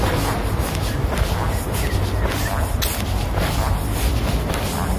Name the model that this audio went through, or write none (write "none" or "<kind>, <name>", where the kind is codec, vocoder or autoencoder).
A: none